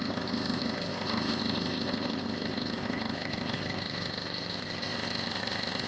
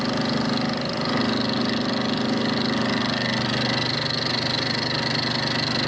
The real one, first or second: second